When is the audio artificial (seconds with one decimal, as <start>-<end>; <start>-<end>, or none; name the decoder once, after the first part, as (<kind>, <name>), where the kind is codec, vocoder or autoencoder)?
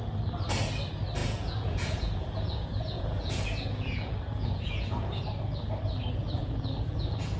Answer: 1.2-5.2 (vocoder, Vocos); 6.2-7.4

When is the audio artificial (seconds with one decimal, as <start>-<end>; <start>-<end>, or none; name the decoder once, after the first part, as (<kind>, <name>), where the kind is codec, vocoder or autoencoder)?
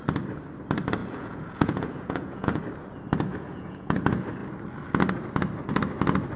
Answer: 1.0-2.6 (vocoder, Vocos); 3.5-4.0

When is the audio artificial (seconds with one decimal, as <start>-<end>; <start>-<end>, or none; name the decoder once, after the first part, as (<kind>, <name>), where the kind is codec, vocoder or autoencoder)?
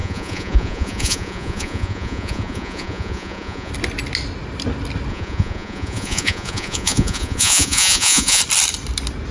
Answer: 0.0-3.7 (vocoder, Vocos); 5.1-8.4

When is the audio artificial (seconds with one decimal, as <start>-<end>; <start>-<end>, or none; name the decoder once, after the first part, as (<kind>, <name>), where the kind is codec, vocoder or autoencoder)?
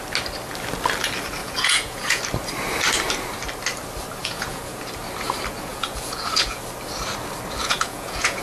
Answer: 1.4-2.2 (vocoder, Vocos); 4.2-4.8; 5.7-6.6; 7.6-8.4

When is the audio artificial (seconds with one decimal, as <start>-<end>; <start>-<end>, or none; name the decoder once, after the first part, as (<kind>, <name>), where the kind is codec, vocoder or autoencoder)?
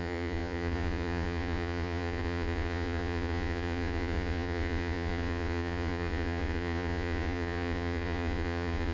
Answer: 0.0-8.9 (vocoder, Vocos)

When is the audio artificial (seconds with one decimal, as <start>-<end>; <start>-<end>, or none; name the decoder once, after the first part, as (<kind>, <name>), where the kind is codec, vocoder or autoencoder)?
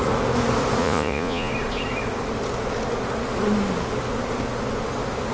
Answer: 0.8-1.5 (vocoder, Vocos)